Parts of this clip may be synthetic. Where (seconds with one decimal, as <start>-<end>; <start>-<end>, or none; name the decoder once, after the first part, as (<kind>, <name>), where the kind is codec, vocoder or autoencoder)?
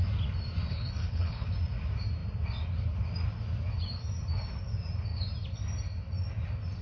0.7-1.5 (codec, HILCodec)